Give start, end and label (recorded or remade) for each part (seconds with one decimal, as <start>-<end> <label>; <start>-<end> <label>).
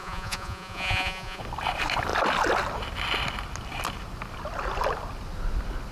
0.0-1.4 remade; 1.4-5.9 recorded